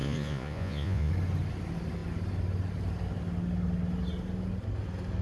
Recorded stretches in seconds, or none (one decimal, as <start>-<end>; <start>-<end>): 1.1-5.2

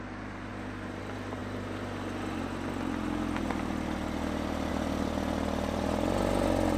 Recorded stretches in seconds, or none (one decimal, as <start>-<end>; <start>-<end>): 0.0-6.8